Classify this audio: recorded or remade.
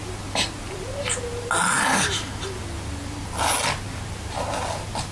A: recorded